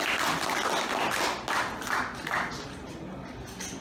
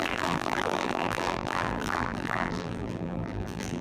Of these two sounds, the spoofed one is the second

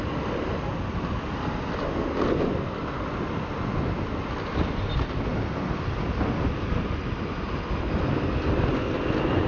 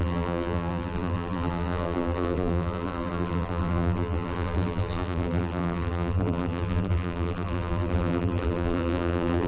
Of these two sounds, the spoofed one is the second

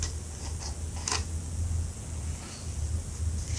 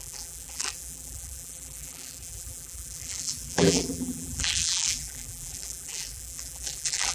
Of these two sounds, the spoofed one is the second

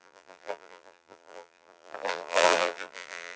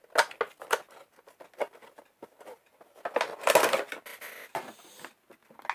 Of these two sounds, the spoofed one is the first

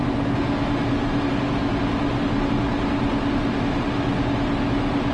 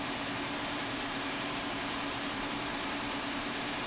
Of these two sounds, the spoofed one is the second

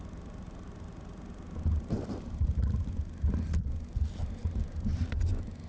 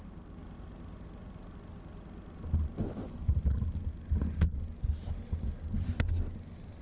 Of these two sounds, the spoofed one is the first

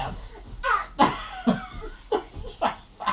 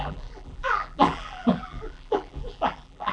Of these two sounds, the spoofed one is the second